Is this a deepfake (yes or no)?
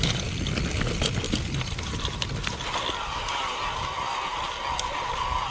no